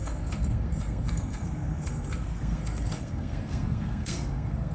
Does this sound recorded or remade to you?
remade